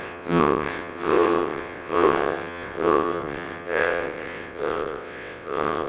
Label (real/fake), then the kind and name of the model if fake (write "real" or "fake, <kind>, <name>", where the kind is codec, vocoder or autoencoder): fake, vocoder, WaveNeXt